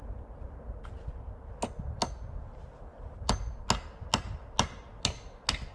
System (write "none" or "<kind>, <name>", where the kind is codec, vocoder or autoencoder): none